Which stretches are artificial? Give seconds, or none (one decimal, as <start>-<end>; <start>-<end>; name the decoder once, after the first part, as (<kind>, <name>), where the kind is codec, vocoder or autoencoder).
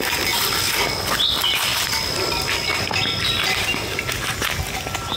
none